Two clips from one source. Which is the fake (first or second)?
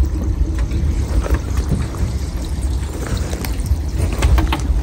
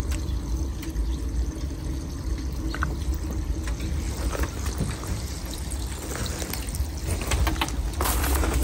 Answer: first